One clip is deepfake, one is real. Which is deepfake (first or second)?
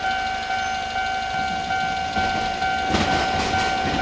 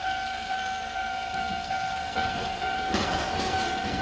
second